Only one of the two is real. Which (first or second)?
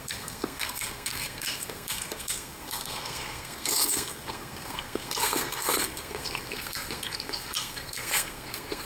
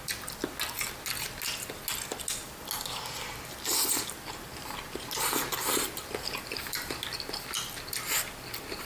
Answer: second